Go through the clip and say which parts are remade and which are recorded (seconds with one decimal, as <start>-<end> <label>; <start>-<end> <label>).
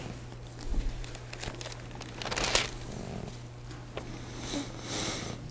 0.0-5.5 recorded